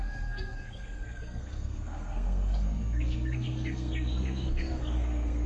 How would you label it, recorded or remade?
remade